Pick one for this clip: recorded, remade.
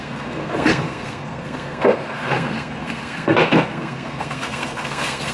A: remade